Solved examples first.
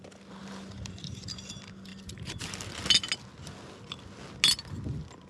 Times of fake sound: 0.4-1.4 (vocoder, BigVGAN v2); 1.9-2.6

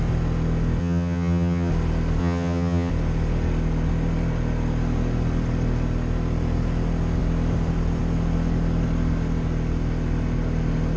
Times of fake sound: 0.8-1.7 (vocoder, HiFi-GAN); 2.2-2.9

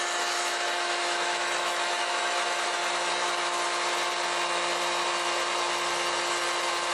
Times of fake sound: 0.0-2.8 (autoencoder, DAC-VAE)

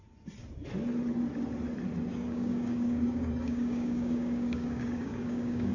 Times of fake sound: 2.1-5.7 (codec, DAC)